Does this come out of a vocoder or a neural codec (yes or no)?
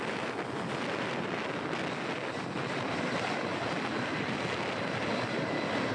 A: no